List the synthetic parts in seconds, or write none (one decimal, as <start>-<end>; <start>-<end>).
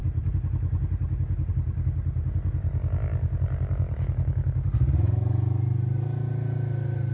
none